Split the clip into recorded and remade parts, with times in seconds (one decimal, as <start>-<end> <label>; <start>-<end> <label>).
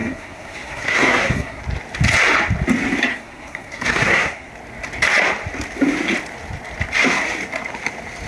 0.0-1.6 remade; 1.6-3.1 recorded; 3.1-4.5 remade; 4.5-8.3 recorded